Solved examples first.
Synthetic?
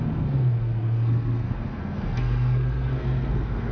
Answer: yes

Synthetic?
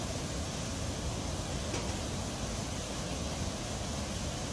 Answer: no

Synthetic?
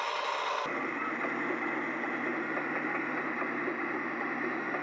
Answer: no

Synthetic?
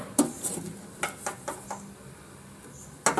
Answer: no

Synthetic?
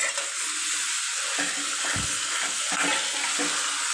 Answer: no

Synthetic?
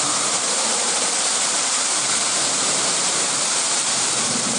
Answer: yes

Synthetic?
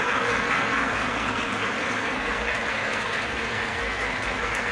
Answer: yes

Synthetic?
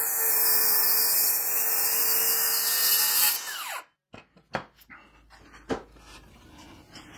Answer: no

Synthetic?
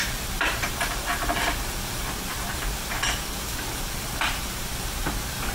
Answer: yes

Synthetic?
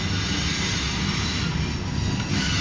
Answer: no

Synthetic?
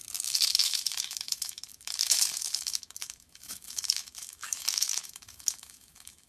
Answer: yes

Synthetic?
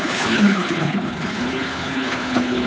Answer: yes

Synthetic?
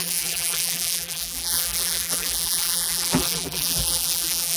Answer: yes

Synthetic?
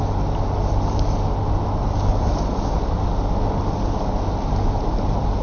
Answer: no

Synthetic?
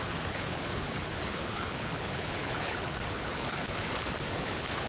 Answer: yes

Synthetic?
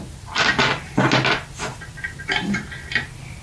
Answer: no